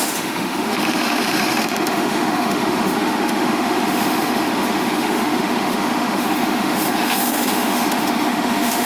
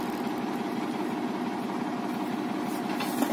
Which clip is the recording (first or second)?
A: second